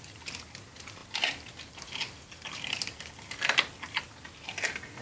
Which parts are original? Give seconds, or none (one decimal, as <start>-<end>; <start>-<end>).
0.0-5.0